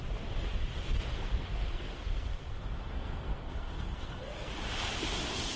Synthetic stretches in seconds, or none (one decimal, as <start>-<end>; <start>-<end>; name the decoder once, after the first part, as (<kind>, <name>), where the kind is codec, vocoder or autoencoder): 1.1-4.5 (codec, SNAC)